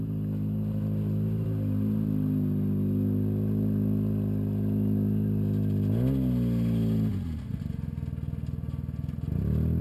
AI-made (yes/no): no